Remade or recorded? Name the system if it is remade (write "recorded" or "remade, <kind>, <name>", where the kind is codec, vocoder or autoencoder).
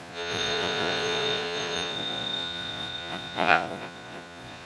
remade, vocoder, Vocos